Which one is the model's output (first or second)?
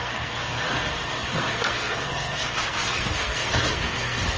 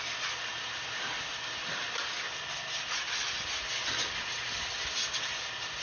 first